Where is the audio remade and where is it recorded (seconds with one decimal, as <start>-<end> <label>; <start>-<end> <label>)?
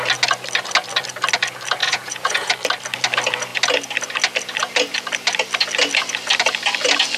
0.0-1.8 recorded; 1.8-2.5 remade; 2.5-7.2 recorded